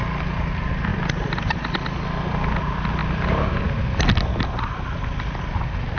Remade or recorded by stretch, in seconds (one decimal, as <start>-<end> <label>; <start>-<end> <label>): 0.0-6.0 recorded